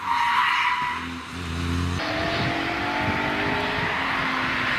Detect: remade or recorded recorded